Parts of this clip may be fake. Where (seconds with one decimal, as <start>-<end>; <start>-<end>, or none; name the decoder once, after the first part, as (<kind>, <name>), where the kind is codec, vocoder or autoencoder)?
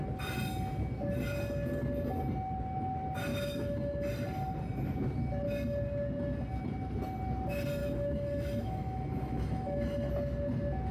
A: 3.3-4.1 (autoencoder, DAC-VAE); 7.8-10.1